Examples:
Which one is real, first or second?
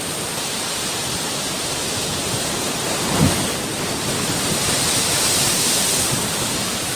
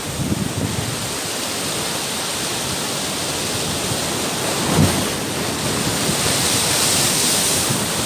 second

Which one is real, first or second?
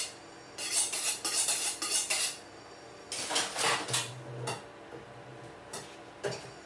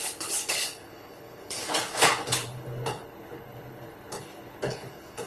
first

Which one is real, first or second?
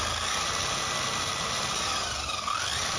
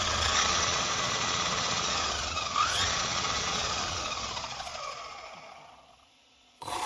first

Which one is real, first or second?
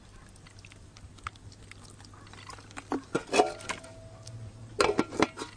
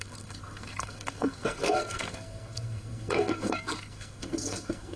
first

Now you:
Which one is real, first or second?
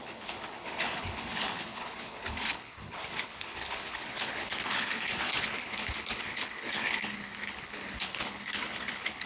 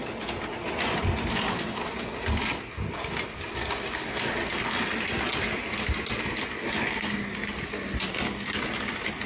second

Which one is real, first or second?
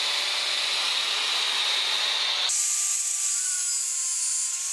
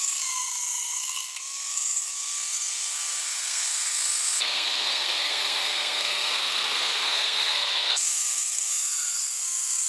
first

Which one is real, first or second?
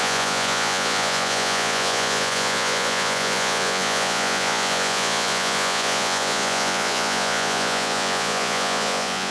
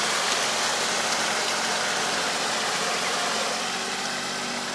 second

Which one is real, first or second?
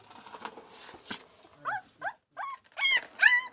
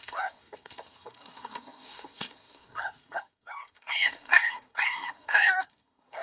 first